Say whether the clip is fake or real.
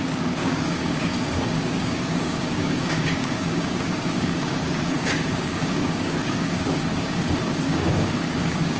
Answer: fake